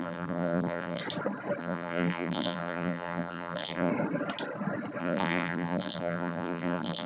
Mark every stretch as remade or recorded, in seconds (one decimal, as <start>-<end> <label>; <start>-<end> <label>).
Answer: 0.0-1.0 remade; 1.0-1.6 recorded; 1.6-3.9 remade; 3.9-5.0 recorded; 5.0-7.1 remade

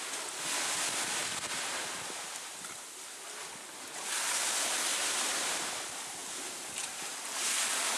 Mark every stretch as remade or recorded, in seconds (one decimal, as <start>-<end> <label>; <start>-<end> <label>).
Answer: 0.0-4.9 recorded; 4.9-5.6 remade; 5.6-6.2 recorded; 6.2-7.2 remade; 7.2-8.0 recorded

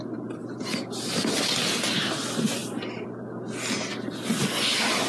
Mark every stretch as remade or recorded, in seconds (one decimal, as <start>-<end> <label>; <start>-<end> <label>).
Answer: 0.0-2.6 recorded; 2.6-3.2 remade; 3.2-5.1 recorded

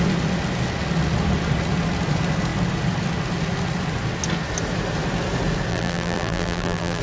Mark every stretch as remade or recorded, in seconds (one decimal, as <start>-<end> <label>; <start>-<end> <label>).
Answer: 0.0-5.7 recorded; 5.7-7.0 remade

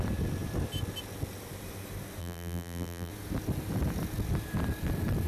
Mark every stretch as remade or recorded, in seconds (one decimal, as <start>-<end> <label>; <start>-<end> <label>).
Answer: 0.0-2.2 recorded; 2.2-3.1 remade; 3.1-5.3 recorded

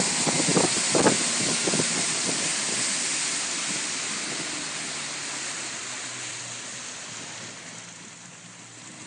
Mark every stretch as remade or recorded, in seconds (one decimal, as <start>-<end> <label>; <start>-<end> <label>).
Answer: 0.0-9.1 recorded

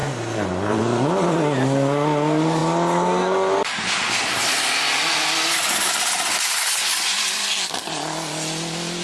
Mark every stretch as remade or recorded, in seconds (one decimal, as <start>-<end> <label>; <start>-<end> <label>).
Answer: 0.0-0.8 remade; 0.8-9.0 recorded